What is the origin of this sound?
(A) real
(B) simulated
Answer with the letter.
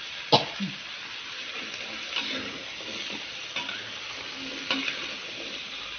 A